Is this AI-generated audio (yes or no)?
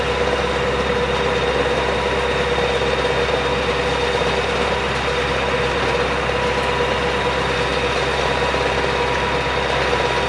no